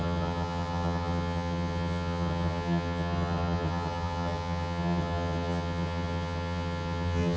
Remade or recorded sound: remade